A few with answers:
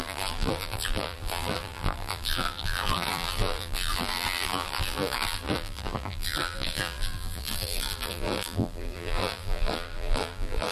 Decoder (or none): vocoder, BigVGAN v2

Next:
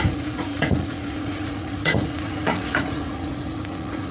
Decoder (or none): vocoder, Vocos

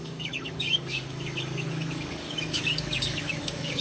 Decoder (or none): codec, DAC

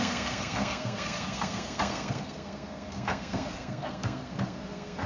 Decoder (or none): codec, SNAC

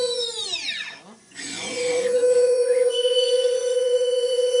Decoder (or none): vocoder, Vocos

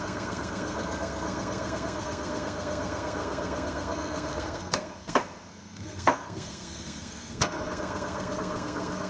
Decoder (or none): codec, SNAC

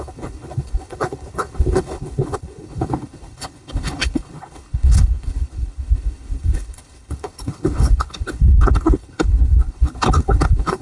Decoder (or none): codec, HILCodec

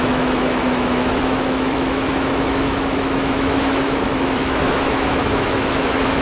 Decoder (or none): autoencoder, DAC-VAE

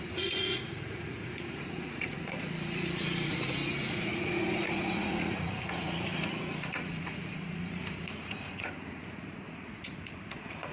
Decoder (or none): vocoder, Vocos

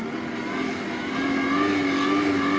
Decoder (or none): none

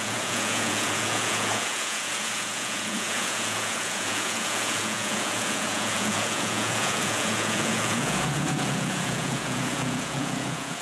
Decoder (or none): vocoder, Vocos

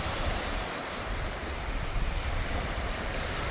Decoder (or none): vocoder, BigVGAN v2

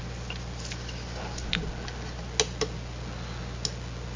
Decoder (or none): none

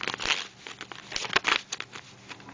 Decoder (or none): none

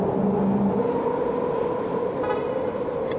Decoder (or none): none